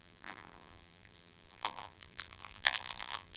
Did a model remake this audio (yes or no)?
yes